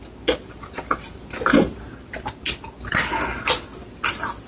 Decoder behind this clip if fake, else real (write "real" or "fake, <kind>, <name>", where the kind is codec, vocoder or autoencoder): real